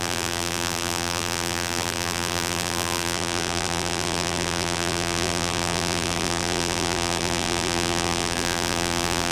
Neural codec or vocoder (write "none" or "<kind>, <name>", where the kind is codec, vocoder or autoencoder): vocoder, BigVGAN v2